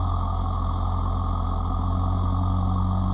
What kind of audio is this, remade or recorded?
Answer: recorded